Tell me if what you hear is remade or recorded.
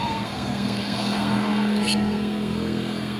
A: remade